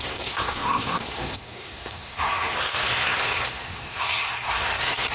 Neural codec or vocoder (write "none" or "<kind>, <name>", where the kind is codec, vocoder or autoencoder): codec, SNAC